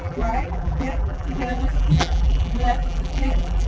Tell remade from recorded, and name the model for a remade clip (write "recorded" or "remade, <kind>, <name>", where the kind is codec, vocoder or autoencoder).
remade, vocoder, BigVGAN v2